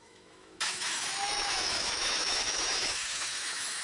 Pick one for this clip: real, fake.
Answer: fake